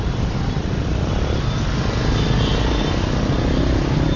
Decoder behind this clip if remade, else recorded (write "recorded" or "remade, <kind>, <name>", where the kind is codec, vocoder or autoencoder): recorded